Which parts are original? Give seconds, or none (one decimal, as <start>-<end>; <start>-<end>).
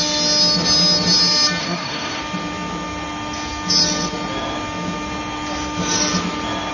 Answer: 0.0-1.6; 2.2-6.7